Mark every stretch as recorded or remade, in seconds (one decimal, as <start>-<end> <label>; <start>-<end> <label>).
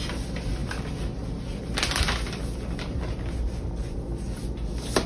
0.0-5.1 recorded